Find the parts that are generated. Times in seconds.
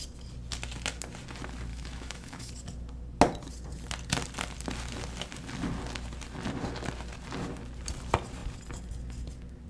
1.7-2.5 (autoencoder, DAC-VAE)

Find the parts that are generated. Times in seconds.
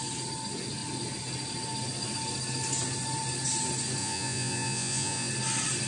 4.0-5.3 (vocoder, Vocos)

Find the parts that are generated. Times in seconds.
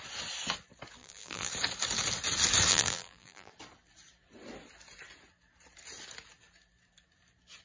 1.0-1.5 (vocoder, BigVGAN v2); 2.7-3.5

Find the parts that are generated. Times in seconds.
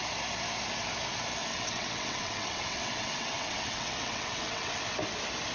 1.5-4.8 (vocoder, WaveNeXt)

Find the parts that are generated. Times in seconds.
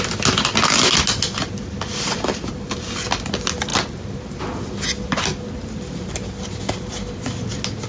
none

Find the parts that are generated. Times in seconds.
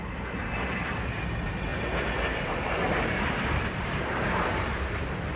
1.7-4.9 (vocoder, BigVGAN v2)